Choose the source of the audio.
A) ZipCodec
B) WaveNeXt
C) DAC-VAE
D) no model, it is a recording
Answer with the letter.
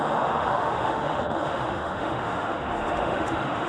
C